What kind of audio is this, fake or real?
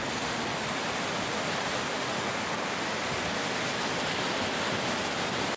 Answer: real